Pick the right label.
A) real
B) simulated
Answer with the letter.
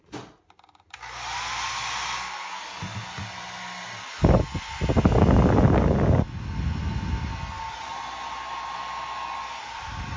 A